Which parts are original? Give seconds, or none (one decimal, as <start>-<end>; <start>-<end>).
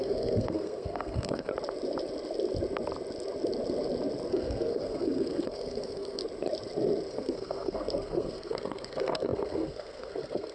1.5-4.3; 6.2-7.1